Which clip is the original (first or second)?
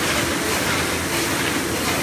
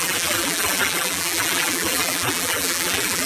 first